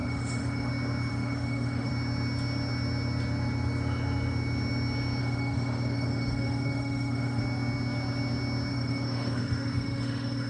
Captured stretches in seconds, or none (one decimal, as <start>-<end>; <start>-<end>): 0.7-1.1; 1.9-5.2; 7.4-8.7